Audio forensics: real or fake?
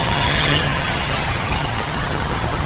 fake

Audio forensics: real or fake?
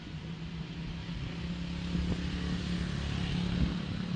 real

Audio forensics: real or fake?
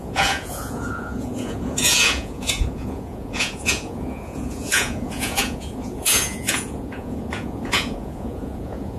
fake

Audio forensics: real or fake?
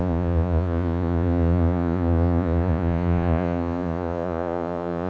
fake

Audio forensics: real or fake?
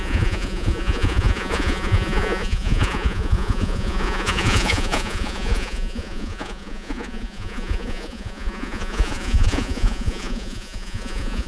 fake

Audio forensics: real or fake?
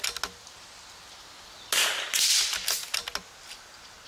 real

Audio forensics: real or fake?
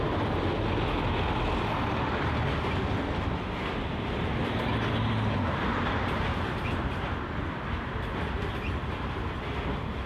real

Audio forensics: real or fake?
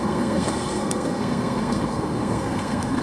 fake